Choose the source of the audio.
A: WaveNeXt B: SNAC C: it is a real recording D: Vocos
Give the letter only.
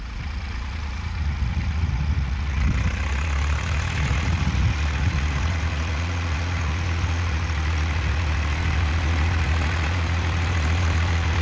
D